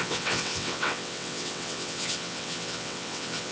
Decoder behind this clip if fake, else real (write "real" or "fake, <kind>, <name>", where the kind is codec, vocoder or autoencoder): fake, vocoder, WaveNeXt